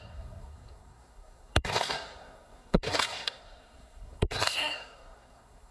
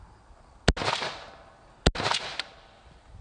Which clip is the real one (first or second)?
second